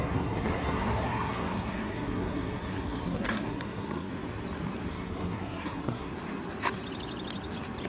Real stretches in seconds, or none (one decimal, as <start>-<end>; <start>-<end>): 4.1-4.9; 6.1-7.9